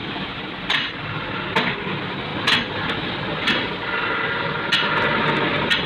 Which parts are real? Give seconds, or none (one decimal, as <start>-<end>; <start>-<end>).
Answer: 0.0-5.9